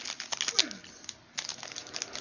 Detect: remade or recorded recorded